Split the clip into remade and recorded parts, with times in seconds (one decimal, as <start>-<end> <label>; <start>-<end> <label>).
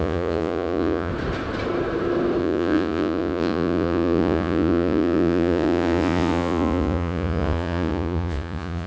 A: 0.0-1.1 remade; 1.1-2.4 recorded; 2.4-8.9 remade